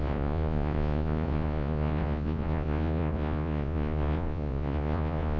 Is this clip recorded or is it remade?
remade